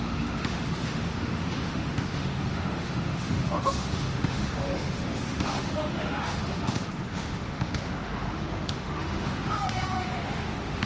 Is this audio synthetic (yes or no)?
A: yes